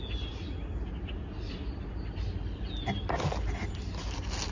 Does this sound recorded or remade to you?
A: recorded